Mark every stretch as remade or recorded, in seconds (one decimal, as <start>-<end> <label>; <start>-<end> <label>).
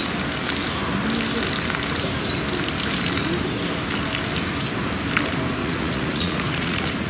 0.0-5.6 recorded; 5.6-7.1 remade